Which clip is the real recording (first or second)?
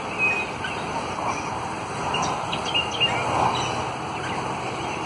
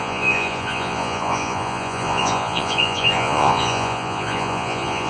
first